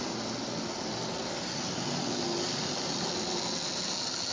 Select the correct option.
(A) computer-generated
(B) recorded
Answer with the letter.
B